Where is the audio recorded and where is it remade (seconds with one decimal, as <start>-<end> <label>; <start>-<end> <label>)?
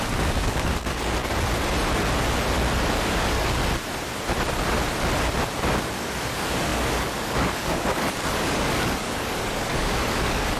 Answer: 0.0-1.2 remade; 1.2-2.9 recorded; 2.9-3.6 remade; 3.6-5.9 recorded; 5.9-10.6 remade